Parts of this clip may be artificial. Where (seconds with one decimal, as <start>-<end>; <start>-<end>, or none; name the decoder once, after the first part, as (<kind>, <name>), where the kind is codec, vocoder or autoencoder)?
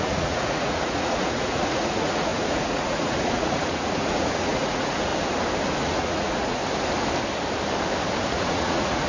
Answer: 0.0-5.1 (vocoder, Vocos); 5.8-6.6; 8.3-9.1